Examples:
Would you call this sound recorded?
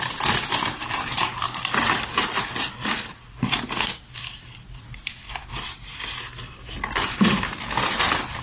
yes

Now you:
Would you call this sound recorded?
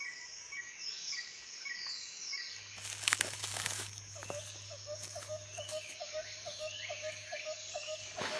no